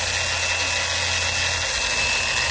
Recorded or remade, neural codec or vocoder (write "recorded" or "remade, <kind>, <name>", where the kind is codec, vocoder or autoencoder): recorded